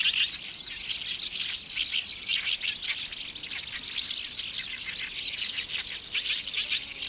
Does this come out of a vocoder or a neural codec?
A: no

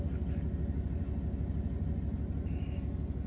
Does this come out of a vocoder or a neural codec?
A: no